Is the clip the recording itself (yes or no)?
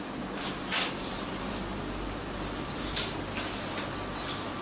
yes